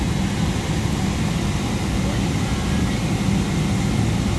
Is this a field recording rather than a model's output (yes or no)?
yes